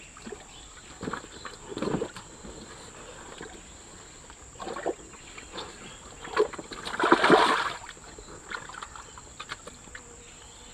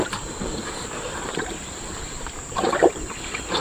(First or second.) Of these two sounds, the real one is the first